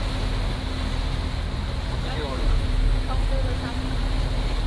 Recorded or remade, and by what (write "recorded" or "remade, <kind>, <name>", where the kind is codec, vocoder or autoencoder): recorded